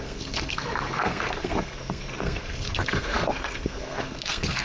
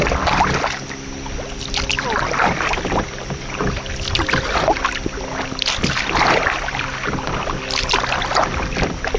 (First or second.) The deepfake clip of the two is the first